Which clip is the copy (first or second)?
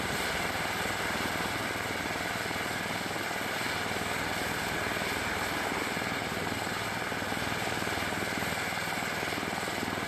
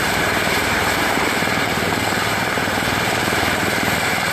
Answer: second